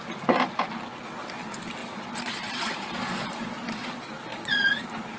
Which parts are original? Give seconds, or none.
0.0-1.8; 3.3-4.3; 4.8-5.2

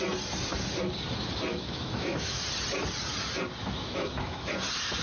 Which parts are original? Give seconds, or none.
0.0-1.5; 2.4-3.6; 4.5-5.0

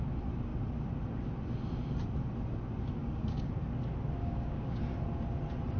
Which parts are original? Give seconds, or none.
0.0-3.0; 3.5-4.2; 4.8-5.8

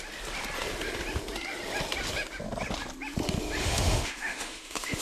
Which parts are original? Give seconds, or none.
0.0-3.6

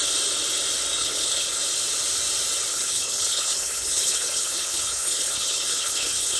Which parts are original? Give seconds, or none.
0.0-1.0; 1.6-2.7

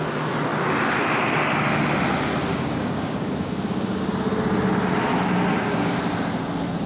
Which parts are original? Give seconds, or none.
0.0-2.5; 4.1-5.5; 6.0-6.9